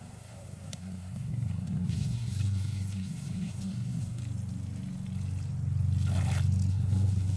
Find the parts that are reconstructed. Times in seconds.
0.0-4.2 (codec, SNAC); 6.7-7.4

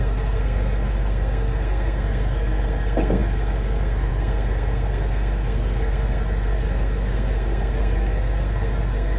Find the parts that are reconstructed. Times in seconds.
0.0-9.2 (codec, SNAC)

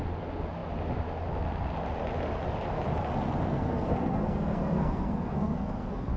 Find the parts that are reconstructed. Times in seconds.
3.5-6.2 (codec, SNAC)

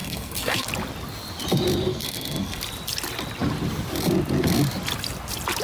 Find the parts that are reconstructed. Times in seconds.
0.0-0.7 (codec, SNAC); 1.9-2.6

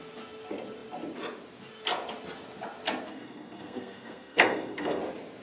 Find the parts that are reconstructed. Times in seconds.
3.1-5.0 (codec, SNAC)